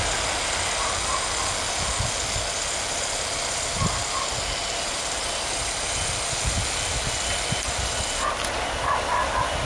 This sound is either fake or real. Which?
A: real